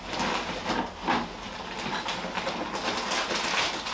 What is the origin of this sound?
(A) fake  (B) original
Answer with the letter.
B